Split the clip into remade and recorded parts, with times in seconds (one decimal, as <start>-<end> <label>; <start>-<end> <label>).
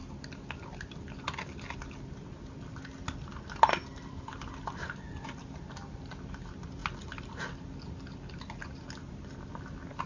0.0-10.1 recorded